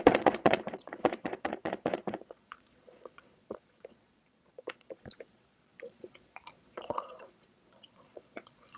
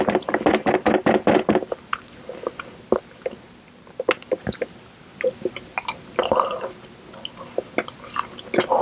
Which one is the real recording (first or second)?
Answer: second